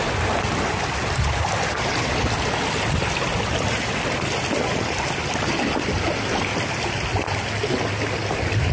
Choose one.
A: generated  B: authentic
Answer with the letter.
B